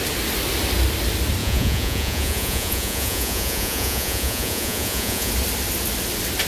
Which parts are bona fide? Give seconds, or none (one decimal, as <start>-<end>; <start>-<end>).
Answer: 0.0-1.4; 5.3-6.5